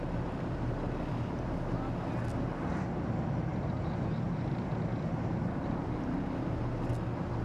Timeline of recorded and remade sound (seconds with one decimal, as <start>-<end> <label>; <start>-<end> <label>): 0.0-3.8 recorded; 3.8-4.7 remade; 4.7-7.4 recorded